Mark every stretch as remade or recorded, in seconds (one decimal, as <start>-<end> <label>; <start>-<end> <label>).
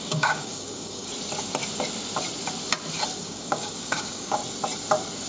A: 0.0-1.1 remade; 1.1-3.2 recorded; 3.2-4.4 remade; 4.4-5.3 recorded